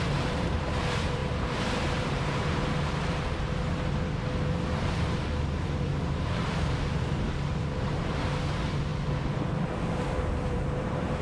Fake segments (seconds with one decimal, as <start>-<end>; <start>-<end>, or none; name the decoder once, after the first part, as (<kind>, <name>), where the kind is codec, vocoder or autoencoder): 0.0-2.6 (vocoder, BigVGAN v2); 4.9-8.9; 10.0-11.2